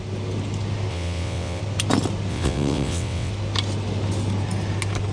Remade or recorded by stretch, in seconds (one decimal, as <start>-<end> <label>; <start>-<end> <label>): 0.0-0.9 recorded; 0.9-1.6 remade; 1.6-2.3 recorded; 2.3-3.3 remade; 3.3-5.1 recorded